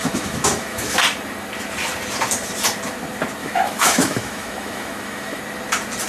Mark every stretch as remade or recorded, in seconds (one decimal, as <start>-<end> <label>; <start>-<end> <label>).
0.0-1.0 remade; 1.0-3.4 recorded; 3.4-5.4 remade; 5.4-6.1 recorded